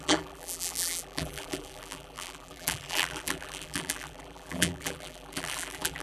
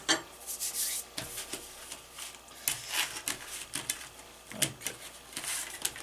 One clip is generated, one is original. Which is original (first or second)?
second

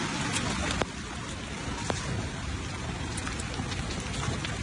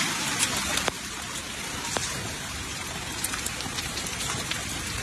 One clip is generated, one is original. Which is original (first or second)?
first